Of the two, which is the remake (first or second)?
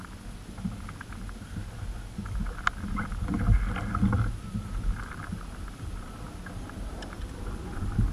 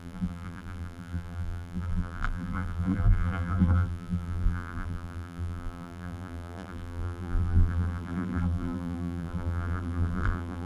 second